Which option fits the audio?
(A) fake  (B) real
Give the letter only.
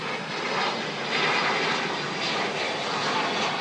B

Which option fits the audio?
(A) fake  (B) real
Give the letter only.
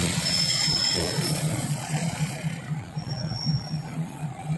A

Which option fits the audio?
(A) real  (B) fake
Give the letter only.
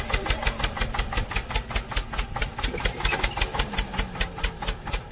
A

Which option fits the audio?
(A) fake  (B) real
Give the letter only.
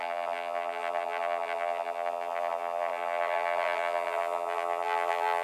A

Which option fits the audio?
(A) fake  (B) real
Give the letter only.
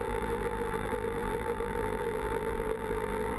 A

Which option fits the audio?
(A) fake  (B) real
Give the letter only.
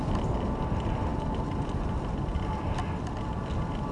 B